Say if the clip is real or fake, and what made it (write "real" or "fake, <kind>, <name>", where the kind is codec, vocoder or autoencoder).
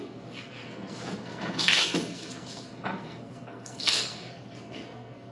fake, codec, SNAC